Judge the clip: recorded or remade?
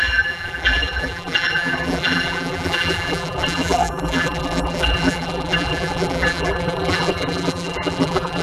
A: remade